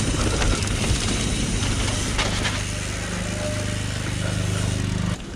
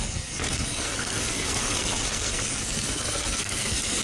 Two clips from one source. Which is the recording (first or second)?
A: first